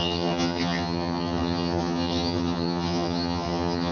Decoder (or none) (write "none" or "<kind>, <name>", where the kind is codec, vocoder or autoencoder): vocoder, HiFi-GAN